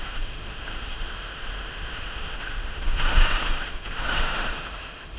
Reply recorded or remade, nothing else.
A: remade